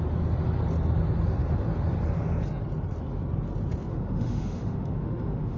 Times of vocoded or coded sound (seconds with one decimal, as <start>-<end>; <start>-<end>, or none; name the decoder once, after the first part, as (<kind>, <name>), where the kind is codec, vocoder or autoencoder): 3.9-5.6 (autoencoder, DAC-VAE)